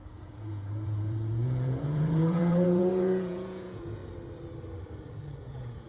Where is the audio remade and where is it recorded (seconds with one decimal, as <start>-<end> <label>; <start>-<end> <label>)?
0.0-4.0 remade; 4.0-5.4 recorded; 5.4-5.9 remade